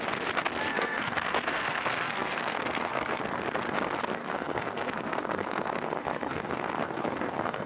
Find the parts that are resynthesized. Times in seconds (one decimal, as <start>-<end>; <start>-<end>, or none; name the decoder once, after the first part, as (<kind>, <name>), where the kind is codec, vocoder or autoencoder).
0.7-3.2 (codec, SNAC); 4.2-7.7